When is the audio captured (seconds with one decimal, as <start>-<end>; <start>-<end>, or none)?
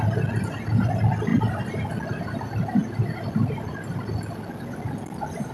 0.0-1.3; 1.9-2.8; 4.0-5.5